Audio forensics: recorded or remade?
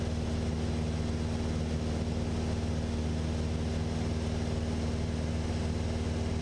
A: recorded